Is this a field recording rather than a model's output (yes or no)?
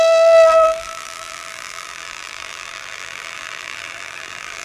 no